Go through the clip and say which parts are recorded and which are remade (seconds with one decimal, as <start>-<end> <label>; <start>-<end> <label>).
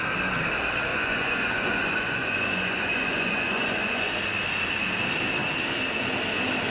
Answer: 0.0-0.9 recorded; 0.9-4.1 remade; 4.1-6.7 recorded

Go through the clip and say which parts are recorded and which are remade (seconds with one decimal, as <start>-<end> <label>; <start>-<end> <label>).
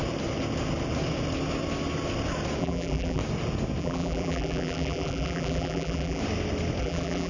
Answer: 0.0-2.6 recorded; 2.6-3.2 remade; 3.2-3.8 recorded; 3.8-6.2 remade; 6.2-6.8 recorded; 6.8-7.3 remade